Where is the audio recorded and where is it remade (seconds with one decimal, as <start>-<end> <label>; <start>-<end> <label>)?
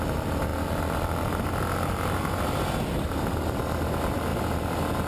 0.0-5.1 recorded